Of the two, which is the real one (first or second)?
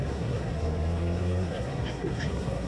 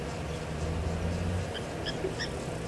second